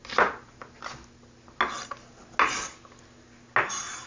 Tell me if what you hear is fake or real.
real